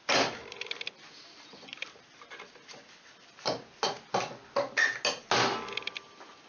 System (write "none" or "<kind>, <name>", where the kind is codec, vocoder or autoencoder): none